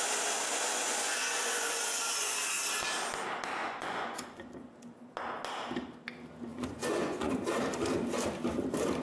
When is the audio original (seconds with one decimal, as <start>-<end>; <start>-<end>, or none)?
0.0-0.8; 2.5-3.6; 4.5-6.5; 7.3-9.0